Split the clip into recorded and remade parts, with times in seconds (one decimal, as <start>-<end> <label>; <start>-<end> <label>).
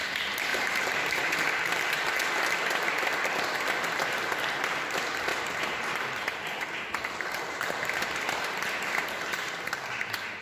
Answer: 0.0-0.5 recorded; 0.5-1.7 remade; 1.7-5.3 recorded; 5.3-8.2 remade; 8.2-10.4 recorded